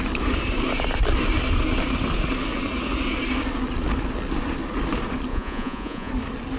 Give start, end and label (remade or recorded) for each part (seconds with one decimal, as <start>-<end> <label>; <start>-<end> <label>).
0.0-5.3 recorded; 5.3-6.1 remade; 6.1-6.6 recorded